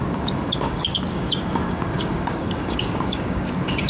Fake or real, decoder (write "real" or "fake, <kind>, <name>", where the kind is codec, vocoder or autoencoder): fake, codec, DAC